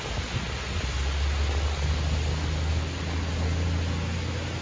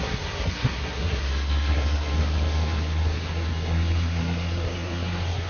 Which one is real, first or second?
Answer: first